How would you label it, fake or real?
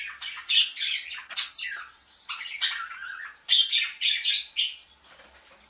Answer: real